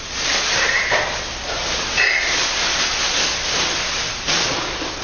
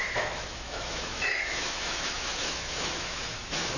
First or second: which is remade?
second